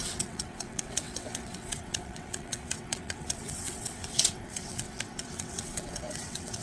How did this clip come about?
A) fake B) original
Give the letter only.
A